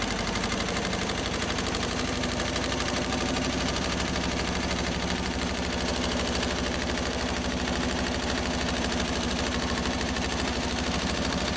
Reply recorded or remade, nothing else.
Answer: remade